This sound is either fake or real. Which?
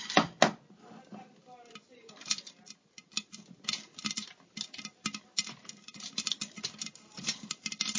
real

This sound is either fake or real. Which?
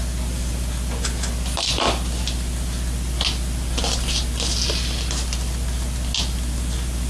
real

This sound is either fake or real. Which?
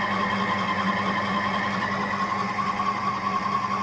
real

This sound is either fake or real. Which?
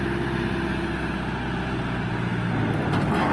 real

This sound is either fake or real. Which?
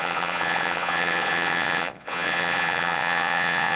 fake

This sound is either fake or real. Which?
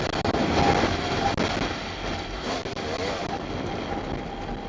real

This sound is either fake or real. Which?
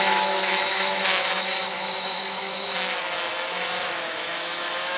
fake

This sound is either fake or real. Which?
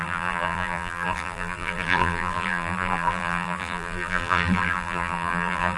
fake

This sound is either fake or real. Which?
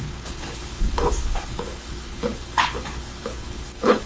fake